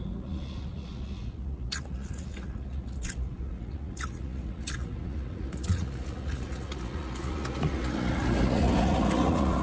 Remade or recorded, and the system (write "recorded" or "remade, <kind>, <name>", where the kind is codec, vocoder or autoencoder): remade, vocoder, Vocos